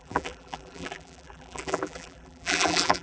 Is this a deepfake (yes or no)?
yes